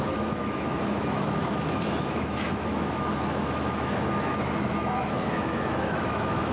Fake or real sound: fake